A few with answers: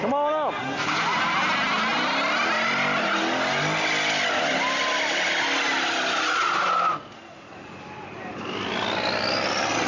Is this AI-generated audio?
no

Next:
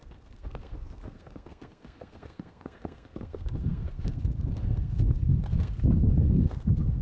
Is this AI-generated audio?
yes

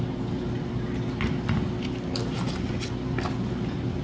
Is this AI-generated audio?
no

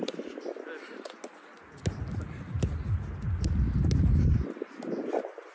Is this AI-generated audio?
no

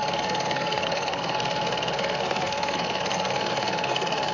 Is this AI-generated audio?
yes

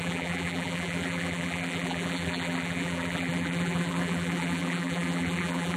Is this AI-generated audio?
yes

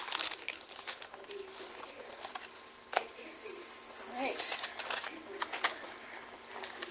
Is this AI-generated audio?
no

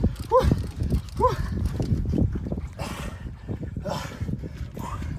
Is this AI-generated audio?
no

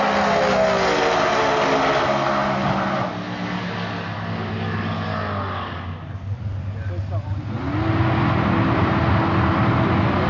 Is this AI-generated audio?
no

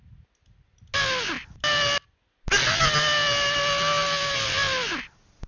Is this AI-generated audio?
no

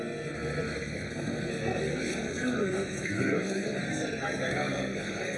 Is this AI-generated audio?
yes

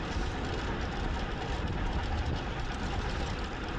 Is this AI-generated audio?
no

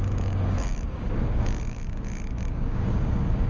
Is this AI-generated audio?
yes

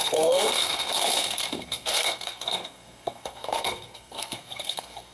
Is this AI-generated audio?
yes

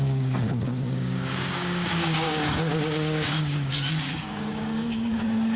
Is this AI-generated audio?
yes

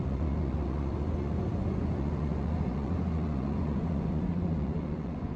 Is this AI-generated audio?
yes